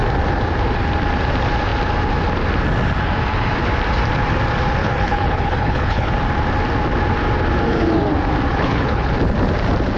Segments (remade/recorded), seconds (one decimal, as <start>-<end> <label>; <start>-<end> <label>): 0.0-4.8 recorded; 4.8-6.1 remade; 6.1-8.5 recorded; 8.5-9.1 remade; 9.1-10.0 recorded